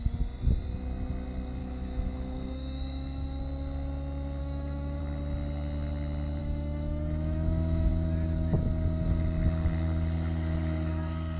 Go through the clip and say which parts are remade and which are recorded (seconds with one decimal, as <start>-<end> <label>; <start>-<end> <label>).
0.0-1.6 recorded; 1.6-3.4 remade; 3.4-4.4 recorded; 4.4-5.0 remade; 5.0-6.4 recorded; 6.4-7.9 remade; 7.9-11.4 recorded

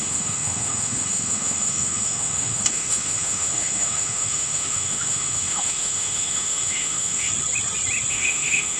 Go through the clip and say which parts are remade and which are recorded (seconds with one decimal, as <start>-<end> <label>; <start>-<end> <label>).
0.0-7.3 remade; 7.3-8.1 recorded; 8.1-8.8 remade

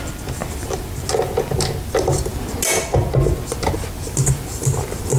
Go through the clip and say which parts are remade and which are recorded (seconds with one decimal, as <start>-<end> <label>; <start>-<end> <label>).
0.0-5.2 recorded

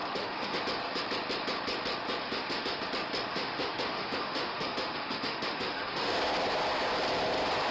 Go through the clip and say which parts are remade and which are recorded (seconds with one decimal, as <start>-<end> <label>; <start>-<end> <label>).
0.0-0.6 remade; 0.6-2.2 recorded; 2.2-2.8 remade; 2.8-3.3 recorded; 3.3-6.2 remade; 6.2-7.7 recorded